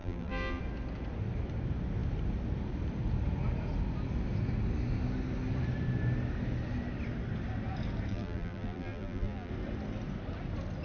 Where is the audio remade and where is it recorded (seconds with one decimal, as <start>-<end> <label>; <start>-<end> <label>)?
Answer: 0.0-0.6 remade; 0.6-8.1 recorded; 8.1-9.5 remade; 9.5-10.8 recorded